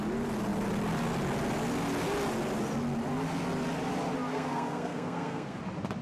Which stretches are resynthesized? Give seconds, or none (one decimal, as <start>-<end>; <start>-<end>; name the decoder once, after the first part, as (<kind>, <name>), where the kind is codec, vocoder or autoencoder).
4.3-5.6 (codec, SNAC)